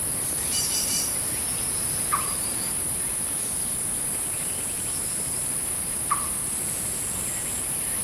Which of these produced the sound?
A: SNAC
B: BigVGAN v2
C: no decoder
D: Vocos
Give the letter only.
B